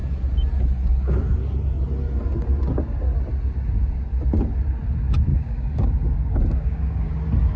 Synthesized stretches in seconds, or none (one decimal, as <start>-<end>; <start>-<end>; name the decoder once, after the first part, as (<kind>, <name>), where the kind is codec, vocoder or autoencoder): 5.3-7.1 (codec, DAC)